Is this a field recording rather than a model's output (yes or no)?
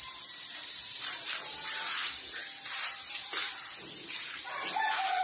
no